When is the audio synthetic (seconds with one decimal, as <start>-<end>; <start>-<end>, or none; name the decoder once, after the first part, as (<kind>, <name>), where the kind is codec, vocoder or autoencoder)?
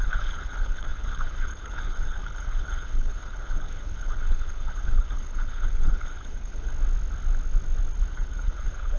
0.0-6.7 (codec, HILCodec); 8.1-9.0